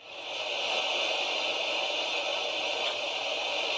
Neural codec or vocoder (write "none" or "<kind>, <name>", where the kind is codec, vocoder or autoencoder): none